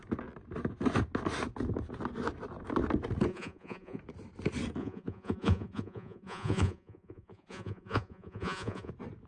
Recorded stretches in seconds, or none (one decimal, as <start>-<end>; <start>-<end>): 0.0-3.3; 4.0-4.8; 8.9-9.3